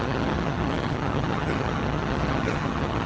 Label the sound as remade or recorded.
remade